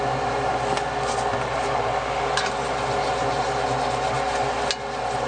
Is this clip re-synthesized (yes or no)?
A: no